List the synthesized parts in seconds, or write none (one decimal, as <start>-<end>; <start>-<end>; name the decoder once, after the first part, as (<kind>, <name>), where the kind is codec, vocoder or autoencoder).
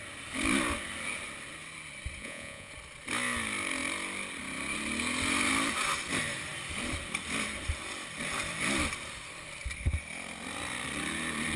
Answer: 2.2-2.7 (vocoder, Vocos)